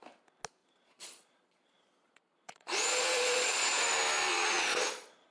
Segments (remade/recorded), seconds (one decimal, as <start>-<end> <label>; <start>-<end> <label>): 0.0-0.6 recorded; 0.6-3.8 remade; 3.8-4.3 recorded; 4.3-5.3 remade